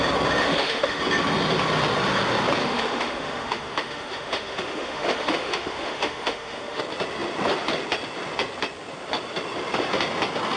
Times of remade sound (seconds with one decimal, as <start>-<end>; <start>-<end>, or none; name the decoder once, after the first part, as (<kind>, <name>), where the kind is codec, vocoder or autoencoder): 0.4-1.0 (autoencoder, DAC-VAE); 2.6-6.8